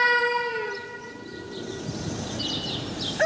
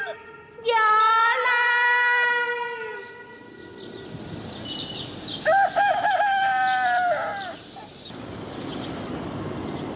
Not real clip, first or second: first